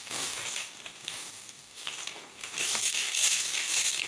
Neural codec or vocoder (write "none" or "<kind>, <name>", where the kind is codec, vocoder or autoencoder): codec, DAC